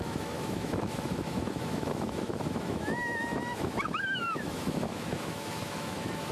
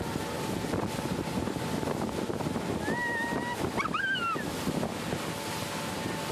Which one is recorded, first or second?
second